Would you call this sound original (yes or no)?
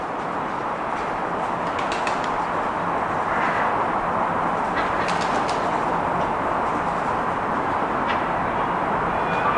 yes